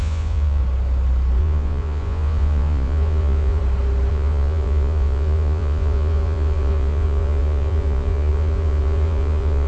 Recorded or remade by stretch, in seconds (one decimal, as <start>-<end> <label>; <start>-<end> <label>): 0.0-0.6 remade; 0.6-1.4 recorded; 1.4-3.6 remade; 3.6-4.1 recorded; 4.1-9.7 remade